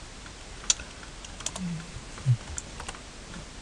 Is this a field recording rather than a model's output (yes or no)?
yes